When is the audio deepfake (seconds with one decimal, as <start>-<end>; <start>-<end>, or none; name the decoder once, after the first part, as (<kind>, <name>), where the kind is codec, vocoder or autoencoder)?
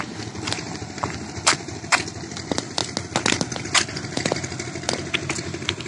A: 0.0-2.8 (vocoder, BigVGAN v2); 3.6-5.9